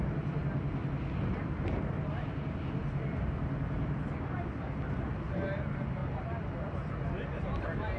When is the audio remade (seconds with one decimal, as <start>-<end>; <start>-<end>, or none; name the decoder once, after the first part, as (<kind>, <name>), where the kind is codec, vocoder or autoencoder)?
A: none